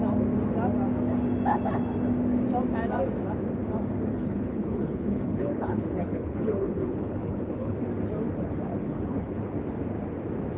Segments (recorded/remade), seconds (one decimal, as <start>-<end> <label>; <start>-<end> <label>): 0.0-4.1 recorded; 4.1-7.8 remade; 7.8-8.7 recorded; 8.7-9.5 remade; 9.5-10.6 recorded